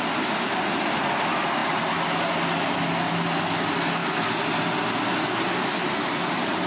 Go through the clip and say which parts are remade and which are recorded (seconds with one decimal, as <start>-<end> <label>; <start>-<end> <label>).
0.0-6.7 recorded